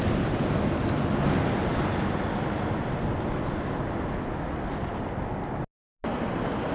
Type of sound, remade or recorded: recorded